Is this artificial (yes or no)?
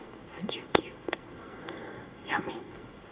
yes